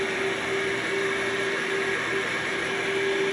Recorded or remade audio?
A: recorded